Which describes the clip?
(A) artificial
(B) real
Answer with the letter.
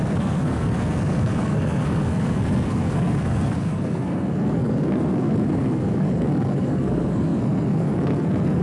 A